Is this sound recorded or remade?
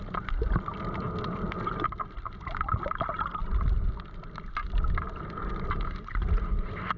recorded